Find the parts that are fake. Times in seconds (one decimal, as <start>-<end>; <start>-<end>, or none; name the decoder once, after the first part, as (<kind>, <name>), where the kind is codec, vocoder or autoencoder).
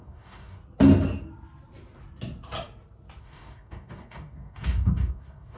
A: 0.0-0.6 (codec, DAC); 3.2-5.6